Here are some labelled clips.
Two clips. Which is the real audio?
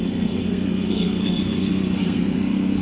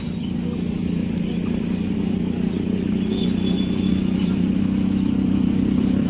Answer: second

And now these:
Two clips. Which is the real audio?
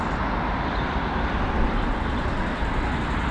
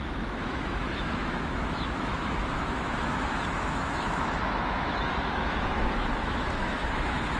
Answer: first